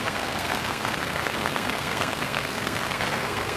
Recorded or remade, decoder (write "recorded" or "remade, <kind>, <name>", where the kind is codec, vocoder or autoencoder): remade, codec, SNAC